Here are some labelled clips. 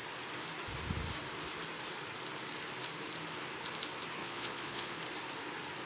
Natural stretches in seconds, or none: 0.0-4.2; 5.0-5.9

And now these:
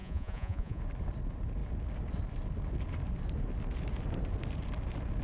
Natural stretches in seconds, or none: 0.8-5.2